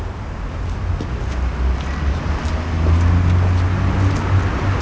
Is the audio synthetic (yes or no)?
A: no